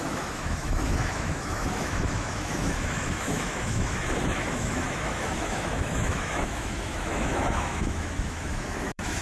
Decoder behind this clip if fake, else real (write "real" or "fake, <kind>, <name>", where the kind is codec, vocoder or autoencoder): fake, autoencoder, DAC-VAE